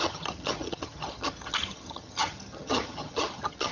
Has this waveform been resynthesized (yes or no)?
yes